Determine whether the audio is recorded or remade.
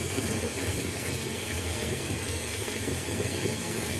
remade